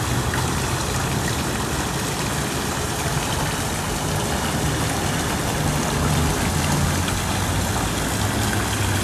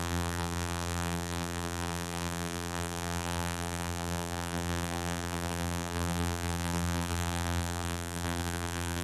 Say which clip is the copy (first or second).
second